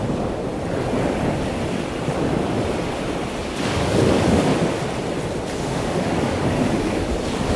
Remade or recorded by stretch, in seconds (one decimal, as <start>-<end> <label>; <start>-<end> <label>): 0.0-0.5 remade; 0.5-3.4 recorded; 3.4-4.5 remade; 4.5-5.6 recorded; 5.6-7.6 remade